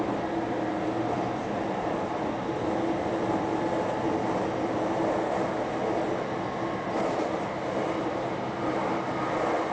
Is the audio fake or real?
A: real